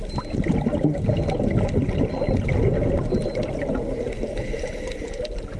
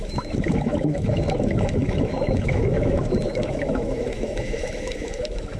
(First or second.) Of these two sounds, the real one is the first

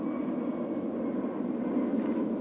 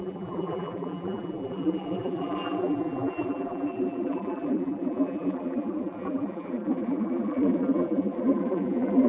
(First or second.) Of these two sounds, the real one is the first